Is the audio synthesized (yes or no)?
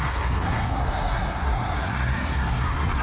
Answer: yes